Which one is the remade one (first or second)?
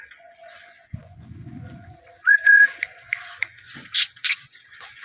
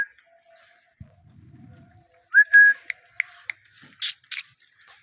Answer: first